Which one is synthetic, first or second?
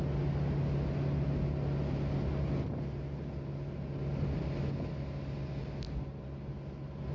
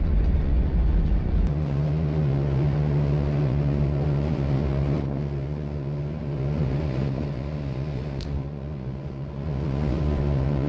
second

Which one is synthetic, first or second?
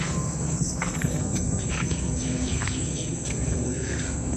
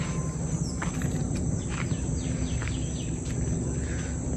first